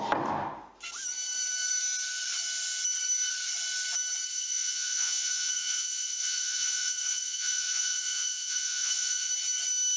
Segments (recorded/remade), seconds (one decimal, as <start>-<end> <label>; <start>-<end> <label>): 0.0-4.3 recorded; 4.3-9.3 remade; 9.3-10.0 recorded